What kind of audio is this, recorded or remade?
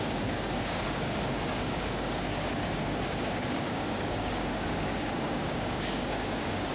remade